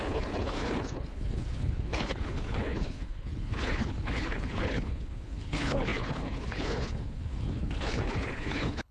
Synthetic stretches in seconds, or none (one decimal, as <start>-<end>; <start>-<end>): 0.0-8.9